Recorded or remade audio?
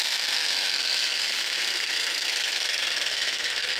remade